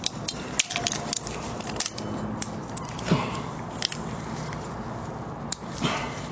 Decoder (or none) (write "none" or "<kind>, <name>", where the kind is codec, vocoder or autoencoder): none